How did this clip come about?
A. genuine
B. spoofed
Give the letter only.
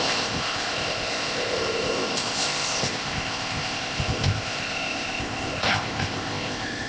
B